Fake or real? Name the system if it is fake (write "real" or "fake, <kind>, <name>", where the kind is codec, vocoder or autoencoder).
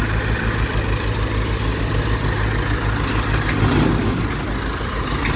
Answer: real